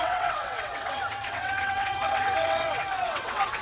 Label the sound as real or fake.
fake